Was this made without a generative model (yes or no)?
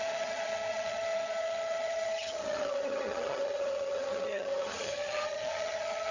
no